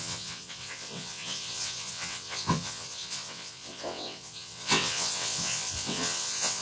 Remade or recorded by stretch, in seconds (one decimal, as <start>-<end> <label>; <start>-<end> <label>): 0.0-6.6 remade